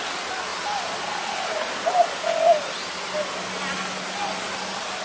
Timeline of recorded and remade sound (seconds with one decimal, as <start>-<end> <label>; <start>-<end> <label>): 0.0-5.0 recorded